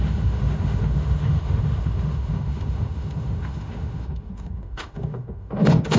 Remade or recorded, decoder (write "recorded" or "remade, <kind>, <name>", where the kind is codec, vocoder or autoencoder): remade, autoencoder, DAC-VAE